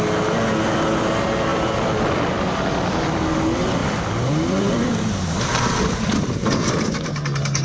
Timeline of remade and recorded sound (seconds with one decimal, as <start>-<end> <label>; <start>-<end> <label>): 0.0-1.5 recorded; 1.5-3.4 remade; 3.4-3.8 recorded; 3.8-6.8 remade; 6.8-7.6 recorded